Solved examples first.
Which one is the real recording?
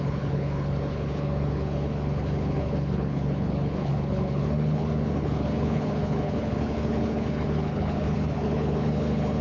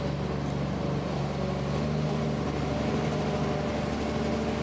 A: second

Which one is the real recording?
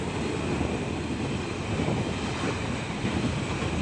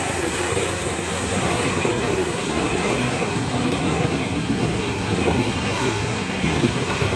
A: first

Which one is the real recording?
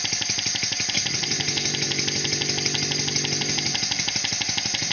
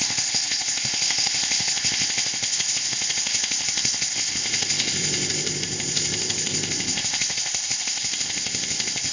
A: first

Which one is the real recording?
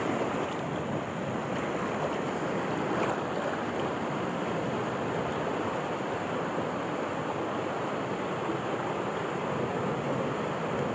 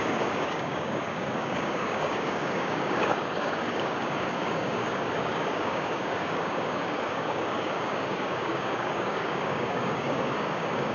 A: first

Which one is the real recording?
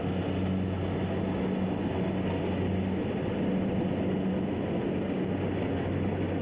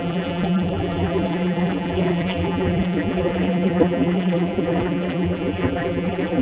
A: first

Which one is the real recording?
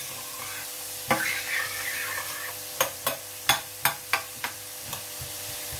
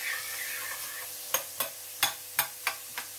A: second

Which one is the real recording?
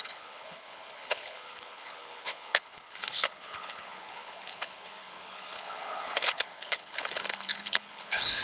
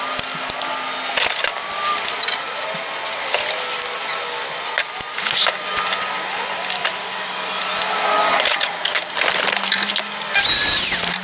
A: second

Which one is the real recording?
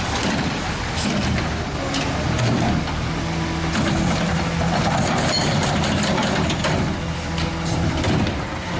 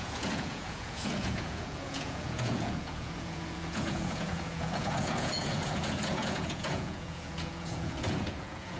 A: first